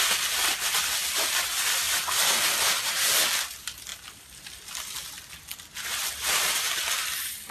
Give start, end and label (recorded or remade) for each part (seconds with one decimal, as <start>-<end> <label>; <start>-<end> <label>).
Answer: 0.0-7.5 recorded